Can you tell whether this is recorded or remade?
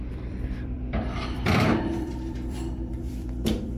remade